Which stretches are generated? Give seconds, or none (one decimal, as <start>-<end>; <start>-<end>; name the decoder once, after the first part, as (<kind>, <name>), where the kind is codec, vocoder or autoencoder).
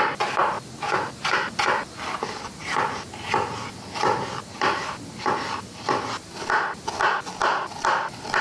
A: none